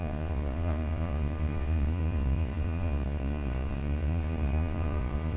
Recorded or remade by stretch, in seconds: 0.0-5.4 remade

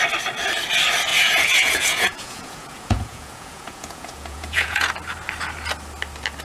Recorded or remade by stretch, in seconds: 0.0-1.1 recorded; 1.1-4.9 remade; 4.9-6.4 recorded

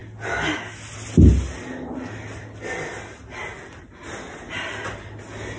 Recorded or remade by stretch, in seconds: 0.0-5.6 recorded

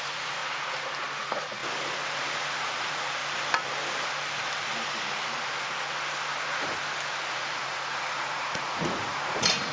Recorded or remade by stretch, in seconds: 0.0-0.4 remade; 0.4-1.2 recorded; 1.2-1.6 remade; 1.6-2.6 recorded; 2.6-3.2 remade; 3.2-7.3 recorded; 7.3-9.7 remade

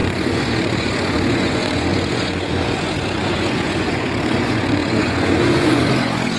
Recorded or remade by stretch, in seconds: 0.0-6.4 remade

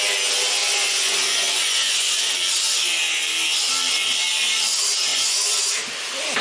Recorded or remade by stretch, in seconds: 0.0-0.6 recorded; 0.6-2.3 remade; 2.3-5.1 recorded; 5.1-5.7 remade; 5.7-6.4 recorded

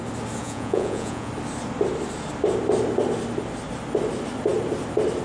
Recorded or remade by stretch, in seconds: 0.0-0.4 recorded; 0.4-1.3 remade; 1.3-5.2 recorded

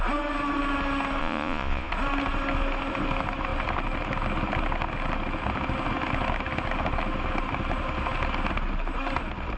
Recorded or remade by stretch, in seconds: 0.0-1.2 recorded; 1.2-1.9 remade; 1.9-9.6 recorded